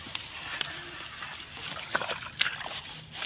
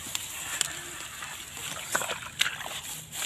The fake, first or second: first